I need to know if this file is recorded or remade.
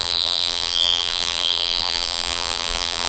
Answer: remade